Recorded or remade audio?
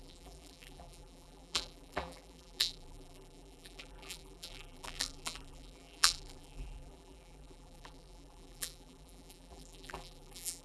remade